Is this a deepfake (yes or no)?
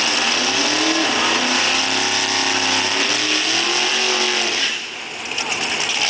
no